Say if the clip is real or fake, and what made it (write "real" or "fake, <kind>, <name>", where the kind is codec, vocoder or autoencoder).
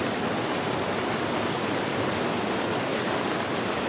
real